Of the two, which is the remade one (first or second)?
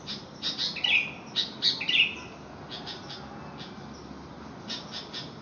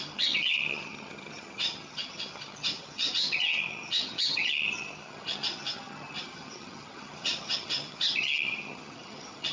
second